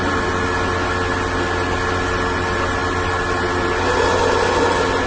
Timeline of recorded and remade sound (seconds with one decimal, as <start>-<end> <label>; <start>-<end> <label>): 0.0-5.1 recorded